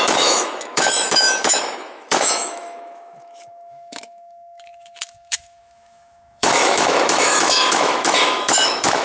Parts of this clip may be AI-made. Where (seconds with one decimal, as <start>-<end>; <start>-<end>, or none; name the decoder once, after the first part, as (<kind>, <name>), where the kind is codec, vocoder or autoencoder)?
0.0-9.0 (autoencoder, DAC-VAE)

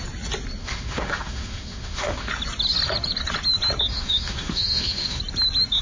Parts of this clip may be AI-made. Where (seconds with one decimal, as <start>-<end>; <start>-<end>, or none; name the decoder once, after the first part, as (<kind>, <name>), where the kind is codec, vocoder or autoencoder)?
0.6-2.3 (autoencoder, DAC-VAE); 3.9-5.2

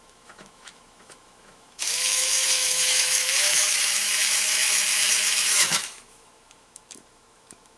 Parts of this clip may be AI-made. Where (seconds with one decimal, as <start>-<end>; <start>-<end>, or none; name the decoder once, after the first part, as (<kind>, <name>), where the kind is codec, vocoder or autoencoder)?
0.0-7.8 (autoencoder, DAC-VAE)

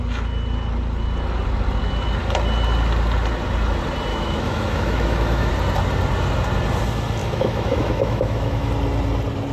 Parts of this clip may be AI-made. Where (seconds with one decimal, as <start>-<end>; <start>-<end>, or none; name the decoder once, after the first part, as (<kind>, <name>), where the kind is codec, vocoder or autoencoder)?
4.1-5.5 (autoencoder, DAC-VAE); 7.2-8.7